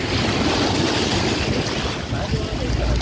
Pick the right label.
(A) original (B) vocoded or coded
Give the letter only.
A